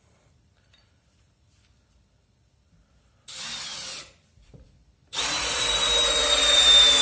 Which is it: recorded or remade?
remade